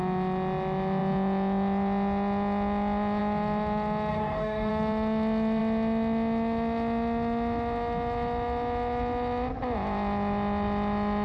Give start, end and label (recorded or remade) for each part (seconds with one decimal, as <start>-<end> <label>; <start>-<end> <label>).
0.0-4.1 recorded; 4.1-4.7 remade; 4.7-11.2 recorded